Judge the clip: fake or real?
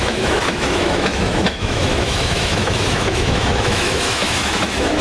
fake